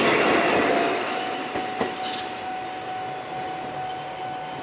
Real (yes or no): yes